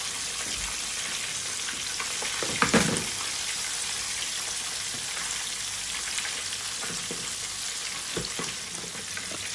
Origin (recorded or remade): recorded